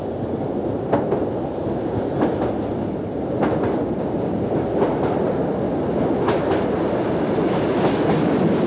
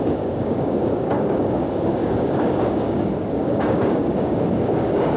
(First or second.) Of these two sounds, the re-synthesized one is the second